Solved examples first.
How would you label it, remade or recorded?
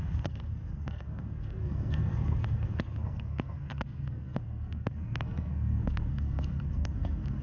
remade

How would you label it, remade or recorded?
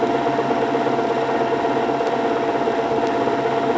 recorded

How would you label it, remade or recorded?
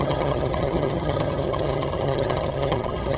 remade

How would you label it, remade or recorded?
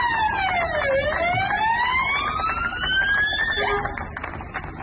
recorded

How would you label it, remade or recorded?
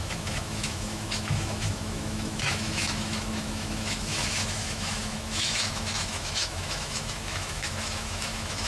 remade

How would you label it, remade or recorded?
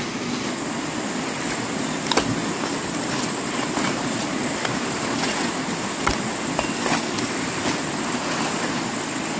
recorded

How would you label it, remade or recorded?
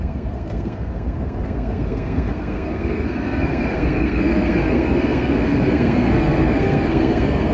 remade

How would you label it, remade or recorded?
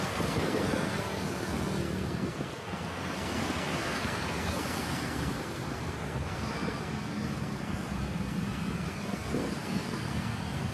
remade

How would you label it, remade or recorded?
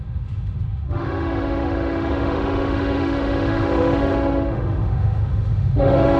remade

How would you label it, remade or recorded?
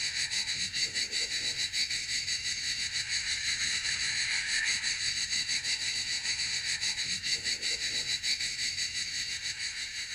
remade